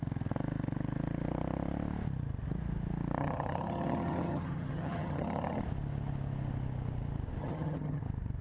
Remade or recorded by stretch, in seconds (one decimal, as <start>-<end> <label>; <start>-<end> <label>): 0.0-3.2 recorded; 3.2-5.6 remade; 5.6-7.4 recorded; 7.4-8.0 remade; 8.0-8.4 recorded